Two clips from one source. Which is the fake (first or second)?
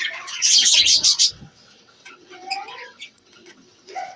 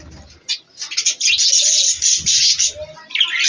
first